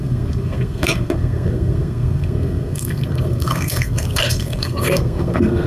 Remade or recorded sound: remade